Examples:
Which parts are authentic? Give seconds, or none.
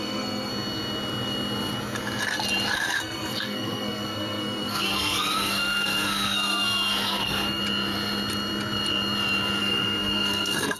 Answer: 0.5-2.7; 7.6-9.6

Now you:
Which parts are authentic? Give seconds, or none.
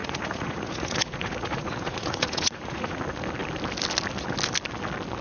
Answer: 3.0-5.2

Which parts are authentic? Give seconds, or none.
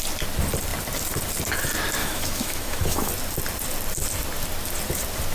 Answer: 0.0-2.0; 3.1-5.3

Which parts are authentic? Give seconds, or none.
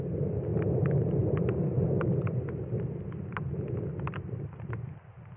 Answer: none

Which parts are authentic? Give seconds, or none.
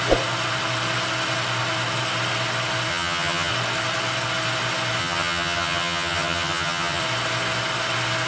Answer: 0.0-2.9; 3.5-5.0; 7.0-8.3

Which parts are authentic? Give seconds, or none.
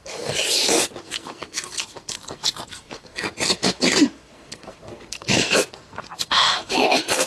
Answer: none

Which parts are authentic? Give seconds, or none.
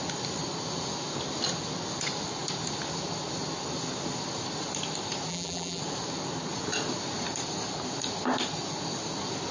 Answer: 0.0-5.3; 5.8-9.5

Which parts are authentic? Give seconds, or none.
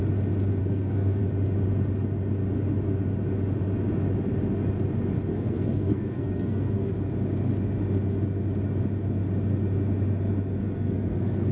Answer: 0.0-0.6; 1.2-5.3; 6.9-10.6